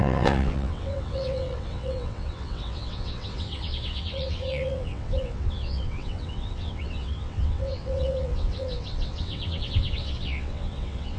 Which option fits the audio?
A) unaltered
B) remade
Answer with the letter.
B